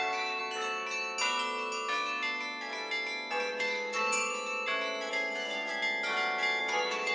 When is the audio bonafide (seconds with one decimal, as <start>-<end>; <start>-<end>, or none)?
0.4-3.5; 4.3-5.1; 5.7-6.6